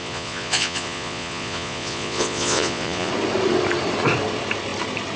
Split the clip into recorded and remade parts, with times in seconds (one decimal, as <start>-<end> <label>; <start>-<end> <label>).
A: 0.0-3.1 remade; 3.1-5.2 recorded